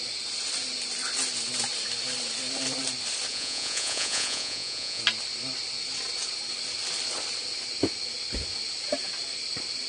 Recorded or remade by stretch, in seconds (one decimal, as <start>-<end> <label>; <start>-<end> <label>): 0.0-3.3 recorded; 3.3-5.0 remade; 5.0-9.9 recorded